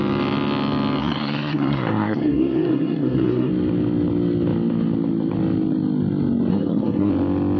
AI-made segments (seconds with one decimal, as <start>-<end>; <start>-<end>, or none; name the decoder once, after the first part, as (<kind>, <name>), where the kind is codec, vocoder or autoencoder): 1.0-3.5 (codec, SNAC); 6.5-7.1